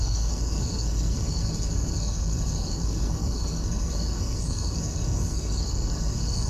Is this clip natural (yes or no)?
no